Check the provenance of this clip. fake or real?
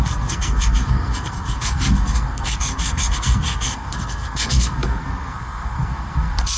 fake